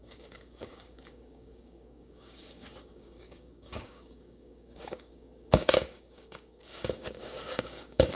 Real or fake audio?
fake